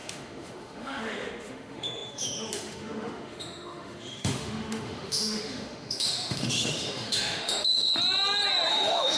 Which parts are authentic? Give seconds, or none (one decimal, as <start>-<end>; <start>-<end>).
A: 7.9-8.7